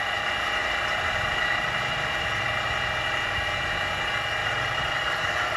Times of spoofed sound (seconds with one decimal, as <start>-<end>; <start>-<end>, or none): 0.6-2.5; 4.4-5.6